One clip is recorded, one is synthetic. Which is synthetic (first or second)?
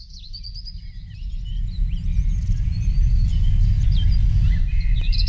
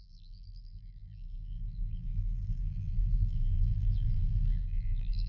second